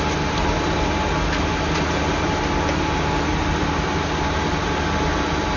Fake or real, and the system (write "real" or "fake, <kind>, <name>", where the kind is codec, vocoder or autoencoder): real